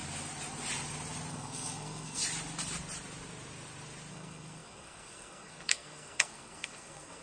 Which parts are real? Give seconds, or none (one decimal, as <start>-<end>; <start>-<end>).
0.0-1.3; 2.2-4.1